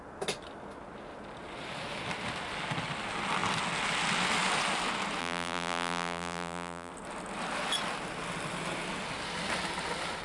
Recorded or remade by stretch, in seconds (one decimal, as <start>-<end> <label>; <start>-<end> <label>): 0.0-5.2 recorded; 5.2-6.9 remade; 6.9-10.2 recorded